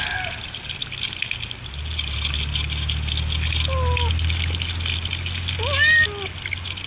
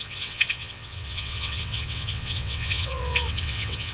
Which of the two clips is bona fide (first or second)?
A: first